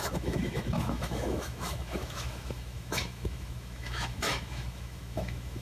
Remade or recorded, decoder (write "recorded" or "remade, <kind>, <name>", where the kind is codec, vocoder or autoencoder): remade, autoencoder, DAC-VAE